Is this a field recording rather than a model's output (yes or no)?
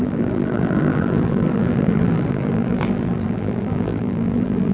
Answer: no